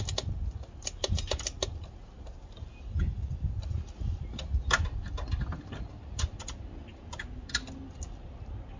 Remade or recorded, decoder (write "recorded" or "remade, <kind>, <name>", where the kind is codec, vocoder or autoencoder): recorded